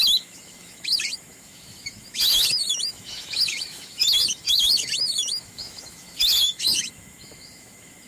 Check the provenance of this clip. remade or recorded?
remade